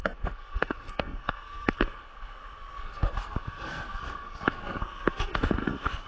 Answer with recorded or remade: remade